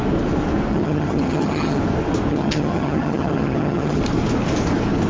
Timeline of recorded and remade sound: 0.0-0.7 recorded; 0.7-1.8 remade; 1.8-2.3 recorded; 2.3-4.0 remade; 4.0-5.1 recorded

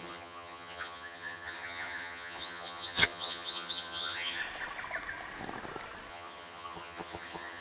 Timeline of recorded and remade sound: 0.0-4.4 remade; 4.4-6.1 recorded; 6.1-7.6 remade